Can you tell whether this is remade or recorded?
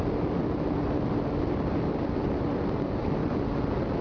recorded